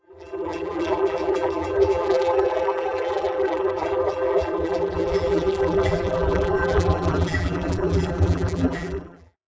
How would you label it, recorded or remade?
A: remade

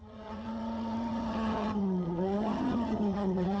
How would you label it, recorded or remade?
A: remade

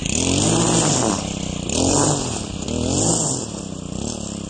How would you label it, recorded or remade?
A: recorded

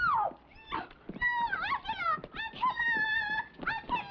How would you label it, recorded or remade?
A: recorded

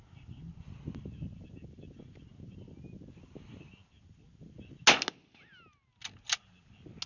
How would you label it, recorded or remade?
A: recorded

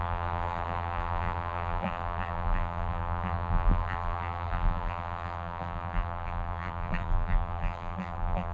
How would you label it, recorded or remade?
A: remade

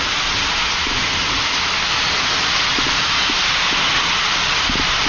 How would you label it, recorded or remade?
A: recorded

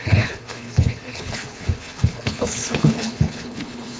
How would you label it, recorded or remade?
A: remade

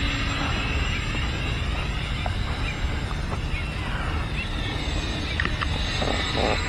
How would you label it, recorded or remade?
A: recorded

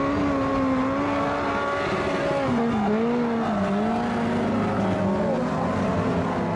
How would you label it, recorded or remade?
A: recorded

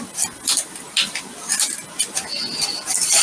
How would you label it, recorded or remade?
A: recorded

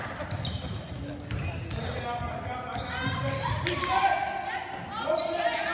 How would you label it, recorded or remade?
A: recorded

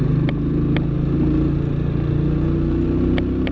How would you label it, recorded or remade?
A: recorded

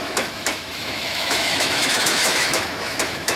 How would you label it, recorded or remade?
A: remade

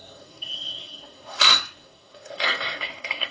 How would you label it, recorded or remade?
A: remade